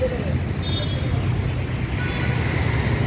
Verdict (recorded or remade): recorded